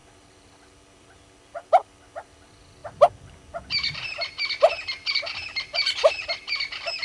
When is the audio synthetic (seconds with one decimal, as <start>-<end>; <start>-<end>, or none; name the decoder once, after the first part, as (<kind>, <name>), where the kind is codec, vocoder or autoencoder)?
0.0-2.8 (vocoder, BigVGAN v2); 5.1-7.0